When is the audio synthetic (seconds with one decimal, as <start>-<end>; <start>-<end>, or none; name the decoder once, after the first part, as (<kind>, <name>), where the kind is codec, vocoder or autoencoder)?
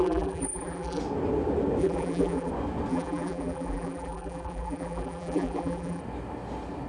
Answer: 0.0-1.0 (vocoder, BigVGAN v2); 1.8-2.5; 2.9-6.0